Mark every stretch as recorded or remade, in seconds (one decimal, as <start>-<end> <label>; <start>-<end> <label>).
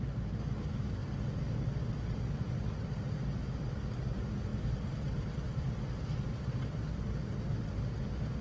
0.0-4.5 recorded; 4.5-5.7 remade; 5.7-8.4 recorded